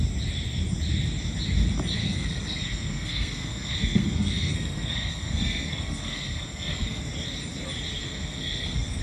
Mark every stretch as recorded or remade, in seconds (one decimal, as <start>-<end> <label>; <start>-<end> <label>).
0.0-2.0 recorded; 2.0-7.0 remade; 7.0-8.0 recorded; 8.0-9.0 remade

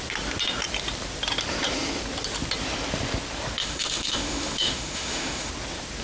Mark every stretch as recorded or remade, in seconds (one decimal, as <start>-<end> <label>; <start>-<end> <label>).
0.0-3.6 recorded; 3.6-5.5 remade; 5.5-6.0 recorded